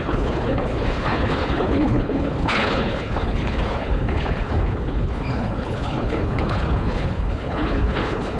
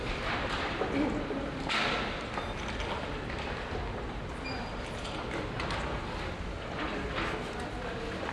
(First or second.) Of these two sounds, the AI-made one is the first